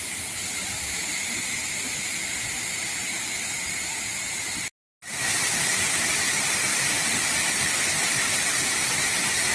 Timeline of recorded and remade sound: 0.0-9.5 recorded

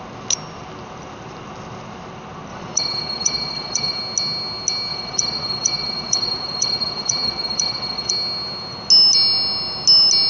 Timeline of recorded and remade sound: 0.0-2.5 recorded; 2.5-4.0 remade; 4.0-4.9 recorded; 4.9-8.1 remade; 8.1-10.3 recorded

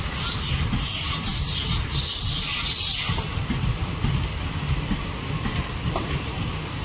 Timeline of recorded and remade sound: 0.0-6.8 recorded

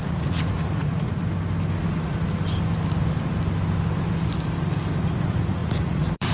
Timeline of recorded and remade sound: 0.0-1.2 remade; 1.2-5.0 recorded; 5.0-6.3 remade

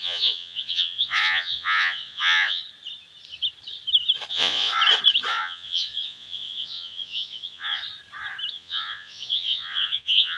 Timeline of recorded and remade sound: 0.0-2.6 remade; 2.6-4.3 recorded; 4.3-4.7 remade; 4.7-5.3 recorded; 5.3-7.8 remade; 7.8-8.5 recorded; 8.5-10.4 remade

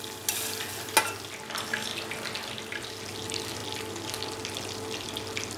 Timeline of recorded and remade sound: 0.0-5.6 recorded